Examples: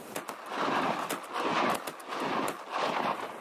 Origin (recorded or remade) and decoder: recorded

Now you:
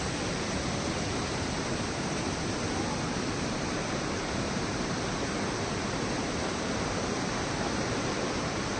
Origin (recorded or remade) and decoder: remade, vocoder, BigVGAN v2